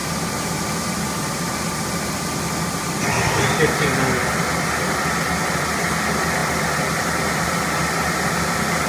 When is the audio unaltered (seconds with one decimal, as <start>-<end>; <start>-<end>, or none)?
0.0-8.9

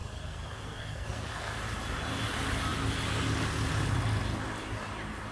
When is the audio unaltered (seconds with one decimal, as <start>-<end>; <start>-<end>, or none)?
1.6-5.3